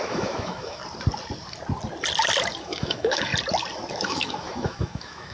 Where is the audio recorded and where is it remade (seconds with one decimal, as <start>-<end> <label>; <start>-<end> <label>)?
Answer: 0.0-0.8 remade; 0.8-2.6 recorded; 2.6-3.3 remade; 3.3-3.9 recorded; 3.9-5.3 remade